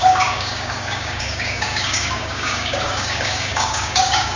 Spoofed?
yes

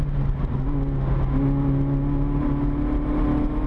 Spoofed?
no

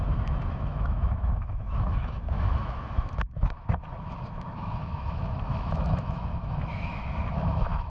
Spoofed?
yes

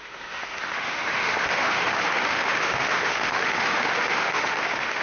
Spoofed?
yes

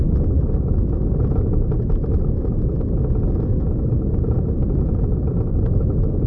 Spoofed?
no